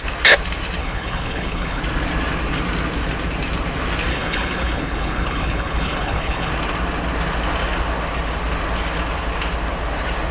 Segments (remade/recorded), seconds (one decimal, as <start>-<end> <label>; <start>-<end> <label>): 0.0-0.8 recorded; 0.8-1.8 remade; 1.8-4.1 recorded; 4.1-6.5 remade; 6.5-10.3 recorded